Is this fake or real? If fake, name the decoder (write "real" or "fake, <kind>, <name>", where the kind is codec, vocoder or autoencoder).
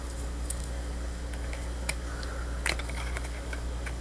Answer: fake, codec, DAC